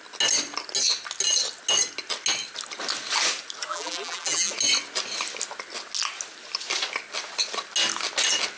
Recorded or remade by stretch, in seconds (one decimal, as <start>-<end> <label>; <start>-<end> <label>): 0.0-3.7 recorded; 3.7-4.5 remade; 4.5-8.6 recorded